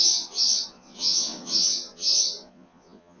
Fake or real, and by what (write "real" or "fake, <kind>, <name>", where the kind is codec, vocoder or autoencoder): fake, vocoder, Vocos